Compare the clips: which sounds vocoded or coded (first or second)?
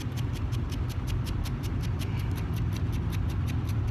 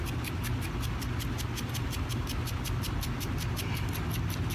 first